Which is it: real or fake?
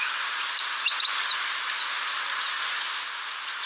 real